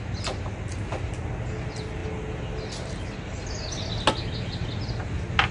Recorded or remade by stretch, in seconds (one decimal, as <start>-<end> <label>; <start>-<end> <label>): 0.0-5.5 recorded